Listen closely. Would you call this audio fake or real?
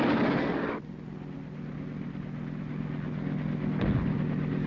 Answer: real